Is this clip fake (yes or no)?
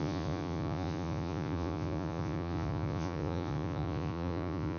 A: yes